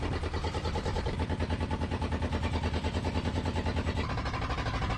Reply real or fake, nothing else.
real